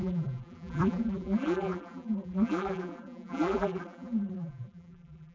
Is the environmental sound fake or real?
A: fake